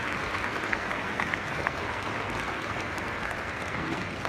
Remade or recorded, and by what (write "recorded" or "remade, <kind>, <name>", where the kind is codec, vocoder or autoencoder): remade, codec, SNAC